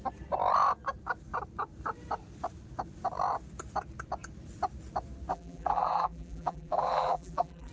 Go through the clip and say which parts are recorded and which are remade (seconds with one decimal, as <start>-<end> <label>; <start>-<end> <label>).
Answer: 0.0-5.3 recorded; 5.3-7.7 remade